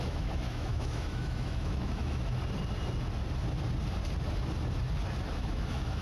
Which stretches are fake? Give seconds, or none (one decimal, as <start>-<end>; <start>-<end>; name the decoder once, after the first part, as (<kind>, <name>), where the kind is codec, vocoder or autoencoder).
0.0-2.4 (autoencoder, DAC-VAE); 5.3-6.0